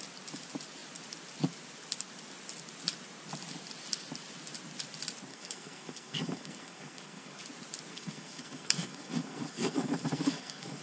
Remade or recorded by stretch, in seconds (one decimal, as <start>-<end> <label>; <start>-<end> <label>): 0.0-5.3 recorded; 5.3-7.4 remade; 7.4-7.9 recorded; 7.9-10.8 remade